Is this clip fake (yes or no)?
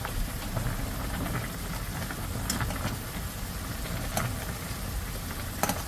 no